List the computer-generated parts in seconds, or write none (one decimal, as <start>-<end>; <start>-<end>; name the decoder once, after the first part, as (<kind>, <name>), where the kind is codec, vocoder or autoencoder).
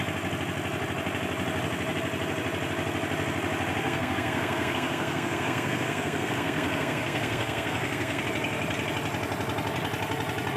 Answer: 3.8-8.2 (codec, SNAC)